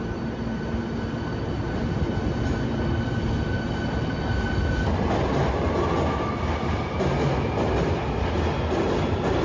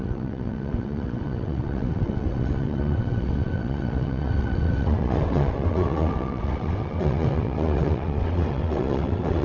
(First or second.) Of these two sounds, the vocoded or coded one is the second